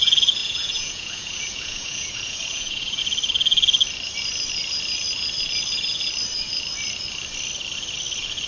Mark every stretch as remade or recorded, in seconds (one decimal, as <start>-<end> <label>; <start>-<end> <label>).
0.0-0.4 recorded; 0.4-3.0 remade; 3.0-8.5 recorded